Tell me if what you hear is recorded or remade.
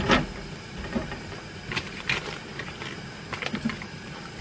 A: recorded